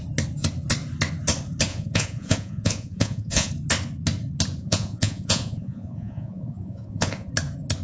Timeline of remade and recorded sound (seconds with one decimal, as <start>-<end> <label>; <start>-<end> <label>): 0.0-1.7 recorded; 1.7-3.5 remade; 3.5-4.6 recorded; 4.6-7.3 remade; 7.3-7.8 recorded